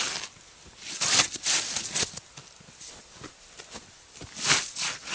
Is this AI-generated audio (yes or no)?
no